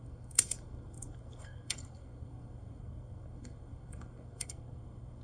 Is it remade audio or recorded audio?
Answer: remade